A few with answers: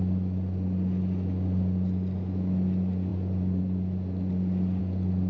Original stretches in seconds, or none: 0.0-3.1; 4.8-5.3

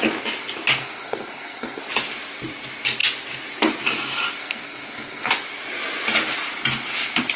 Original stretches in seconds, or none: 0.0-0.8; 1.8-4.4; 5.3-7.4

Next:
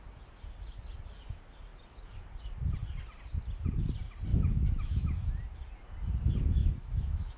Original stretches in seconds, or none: 0.0-4.3; 5.3-6.6